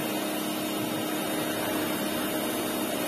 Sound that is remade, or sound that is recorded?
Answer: recorded